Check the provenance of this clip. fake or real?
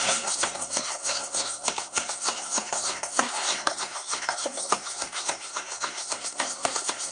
fake